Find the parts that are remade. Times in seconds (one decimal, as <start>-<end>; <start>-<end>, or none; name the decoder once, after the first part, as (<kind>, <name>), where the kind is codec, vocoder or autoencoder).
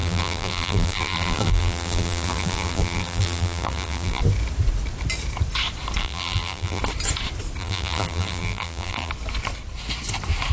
0.0-4.2 (vocoder, BigVGAN v2); 6.0-6.8; 7.6-9.1